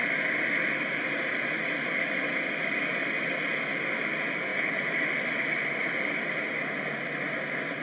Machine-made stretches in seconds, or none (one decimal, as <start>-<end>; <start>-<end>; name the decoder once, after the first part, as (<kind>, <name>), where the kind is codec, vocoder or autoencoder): none